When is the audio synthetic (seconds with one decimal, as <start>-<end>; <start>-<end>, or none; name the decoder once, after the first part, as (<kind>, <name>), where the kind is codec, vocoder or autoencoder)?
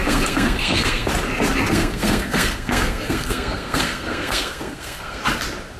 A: 0.0-1.1 (codec, SNAC); 1.7-5.2